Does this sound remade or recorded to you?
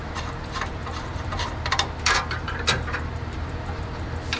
remade